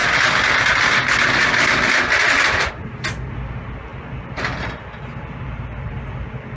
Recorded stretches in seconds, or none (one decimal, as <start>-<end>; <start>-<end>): 0.0-6.6